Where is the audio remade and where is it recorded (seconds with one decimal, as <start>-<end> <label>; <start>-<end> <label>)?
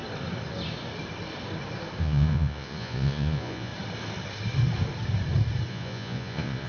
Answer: 0.0-2.0 recorded; 2.0-3.7 remade; 3.7-5.7 recorded; 5.7-6.7 remade